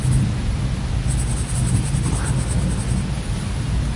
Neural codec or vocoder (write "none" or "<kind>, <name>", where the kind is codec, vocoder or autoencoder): none